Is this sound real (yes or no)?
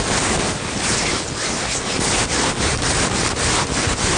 yes